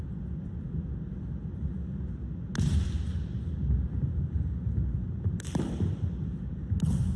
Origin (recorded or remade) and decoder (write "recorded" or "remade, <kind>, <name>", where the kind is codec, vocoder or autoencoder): recorded